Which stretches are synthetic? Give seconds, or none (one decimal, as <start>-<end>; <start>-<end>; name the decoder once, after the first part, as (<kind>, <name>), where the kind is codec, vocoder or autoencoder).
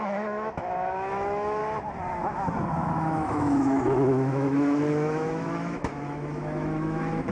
0.0-1.6 (autoencoder, DAC-VAE); 2.7-7.3